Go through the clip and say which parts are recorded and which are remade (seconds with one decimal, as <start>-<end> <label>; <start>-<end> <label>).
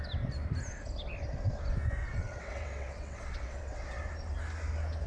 0.0-2.0 recorded; 2.0-4.0 remade; 4.0-5.1 recorded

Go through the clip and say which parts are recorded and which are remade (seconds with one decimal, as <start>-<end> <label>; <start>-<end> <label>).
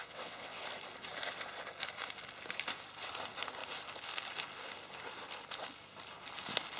0.0-0.6 remade; 0.6-6.8 recorded